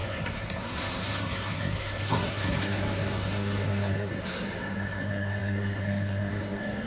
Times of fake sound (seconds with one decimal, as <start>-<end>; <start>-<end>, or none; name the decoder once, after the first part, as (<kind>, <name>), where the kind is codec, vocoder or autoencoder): 0.0-6.9 (codec, SNAC)